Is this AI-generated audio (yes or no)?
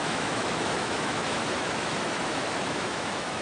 yes